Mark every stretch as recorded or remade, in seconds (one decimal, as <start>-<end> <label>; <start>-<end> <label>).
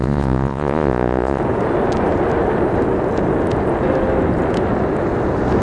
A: 0.0-1.4 remade; 1.4-5.6 recorded